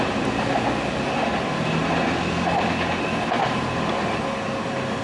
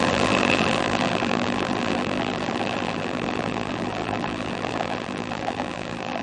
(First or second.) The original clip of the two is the first